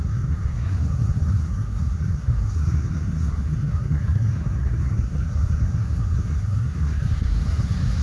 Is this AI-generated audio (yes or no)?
yes